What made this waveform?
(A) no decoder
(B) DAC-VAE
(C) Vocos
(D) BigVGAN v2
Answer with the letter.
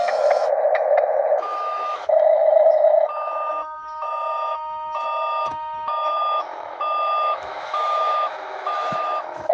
B